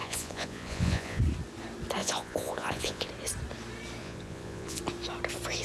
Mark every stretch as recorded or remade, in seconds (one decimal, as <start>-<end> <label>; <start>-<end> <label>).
0.0-1.2 remade; 1.2-2.0 recorded; 2.0-3.1 remade; 3.1-4.0 recorded; 4.0-4.8 remade; 4.8-5.6 recorded